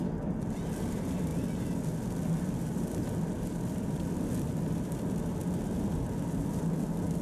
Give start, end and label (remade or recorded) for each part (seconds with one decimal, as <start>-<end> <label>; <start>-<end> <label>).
0.0-7.2 recorded